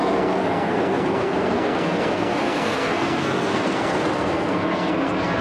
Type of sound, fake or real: fake